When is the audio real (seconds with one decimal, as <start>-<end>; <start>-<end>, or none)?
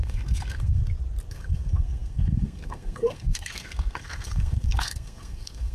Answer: 0.8-1.3